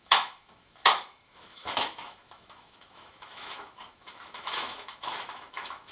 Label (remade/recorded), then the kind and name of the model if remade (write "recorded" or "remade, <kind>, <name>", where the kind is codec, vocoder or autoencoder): remade, autoencoder, DAC-VAE